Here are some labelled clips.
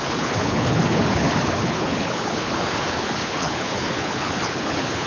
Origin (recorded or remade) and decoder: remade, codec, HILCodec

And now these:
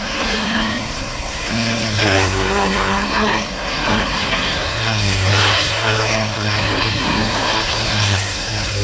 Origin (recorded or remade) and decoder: remade, codec, SNAC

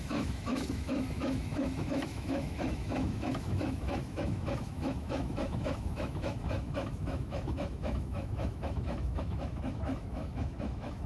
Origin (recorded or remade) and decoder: remade, autoencoder, DAC-VAE